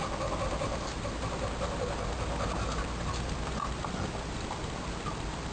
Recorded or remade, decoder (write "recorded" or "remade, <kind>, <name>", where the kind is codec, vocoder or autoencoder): recorded